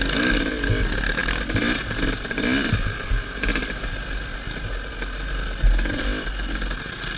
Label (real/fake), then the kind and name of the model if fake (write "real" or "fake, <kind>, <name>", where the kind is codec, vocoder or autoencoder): real